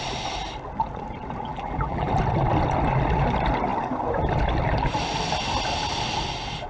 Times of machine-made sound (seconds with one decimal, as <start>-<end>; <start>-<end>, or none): 1.5-2.1